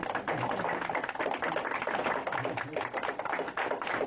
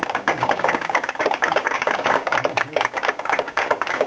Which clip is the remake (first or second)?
second